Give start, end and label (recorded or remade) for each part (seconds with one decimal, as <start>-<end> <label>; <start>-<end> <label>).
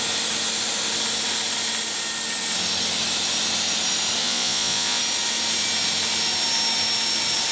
0.0-4.2 recorded; 4.2-5.0 remade; 5.0-7.5 recorded